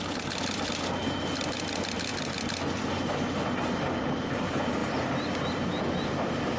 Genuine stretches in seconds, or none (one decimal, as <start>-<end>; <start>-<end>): 0.0-6.6